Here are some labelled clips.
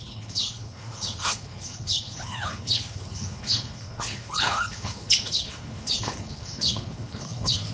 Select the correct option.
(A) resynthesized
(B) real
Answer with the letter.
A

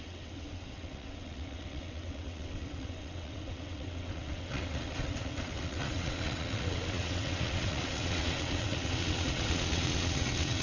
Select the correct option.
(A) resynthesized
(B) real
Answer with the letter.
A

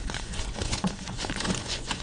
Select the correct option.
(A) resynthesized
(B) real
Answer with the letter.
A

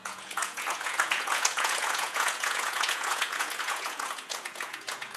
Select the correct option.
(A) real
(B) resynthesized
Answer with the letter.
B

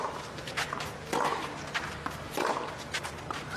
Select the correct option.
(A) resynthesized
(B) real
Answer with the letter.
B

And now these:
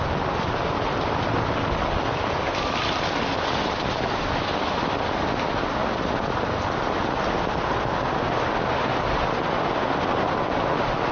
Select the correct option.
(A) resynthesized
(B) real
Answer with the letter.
B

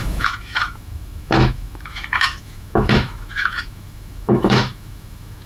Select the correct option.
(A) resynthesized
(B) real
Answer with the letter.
A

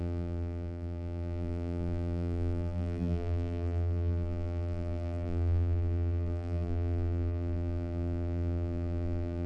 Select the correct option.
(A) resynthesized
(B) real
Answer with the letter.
A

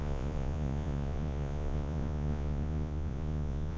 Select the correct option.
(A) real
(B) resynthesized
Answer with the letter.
B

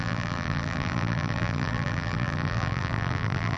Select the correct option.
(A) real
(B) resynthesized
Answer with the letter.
B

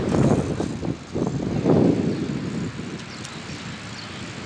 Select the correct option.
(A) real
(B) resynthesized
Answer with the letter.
A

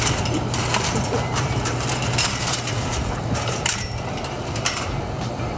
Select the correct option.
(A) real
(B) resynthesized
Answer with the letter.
B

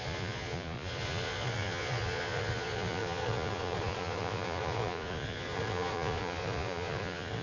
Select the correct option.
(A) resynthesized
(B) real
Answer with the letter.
A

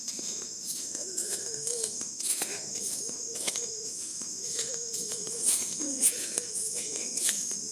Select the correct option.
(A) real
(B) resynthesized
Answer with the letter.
B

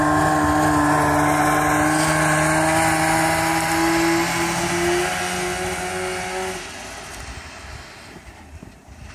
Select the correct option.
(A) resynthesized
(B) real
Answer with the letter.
B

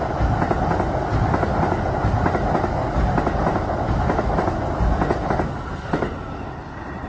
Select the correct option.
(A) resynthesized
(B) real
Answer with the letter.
B